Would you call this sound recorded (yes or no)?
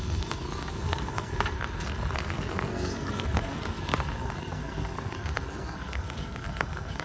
no